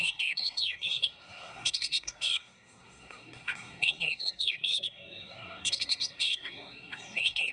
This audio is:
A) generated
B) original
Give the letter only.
A